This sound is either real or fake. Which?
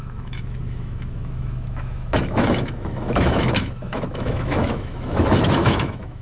fake